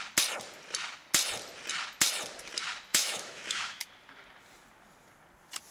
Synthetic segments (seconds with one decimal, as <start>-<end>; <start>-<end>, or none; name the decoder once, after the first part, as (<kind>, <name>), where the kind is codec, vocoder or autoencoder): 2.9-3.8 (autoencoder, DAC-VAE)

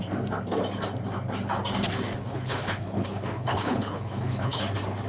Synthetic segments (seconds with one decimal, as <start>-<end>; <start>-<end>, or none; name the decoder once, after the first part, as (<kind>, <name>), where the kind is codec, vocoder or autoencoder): 2.2-4.6 (codec, HILCodec)

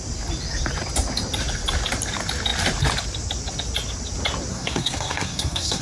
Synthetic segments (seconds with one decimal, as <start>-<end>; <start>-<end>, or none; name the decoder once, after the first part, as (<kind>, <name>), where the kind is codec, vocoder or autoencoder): 4.5-5.8 (codec, SNAC)

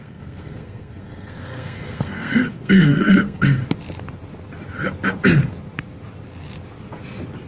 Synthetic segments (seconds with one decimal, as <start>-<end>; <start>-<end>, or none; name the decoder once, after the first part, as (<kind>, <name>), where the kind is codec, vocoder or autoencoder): 0.0-3.6 (codec, SNAC)